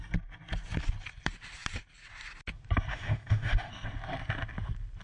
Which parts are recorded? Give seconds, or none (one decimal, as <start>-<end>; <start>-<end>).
0.0-2.9; 3.7-5.0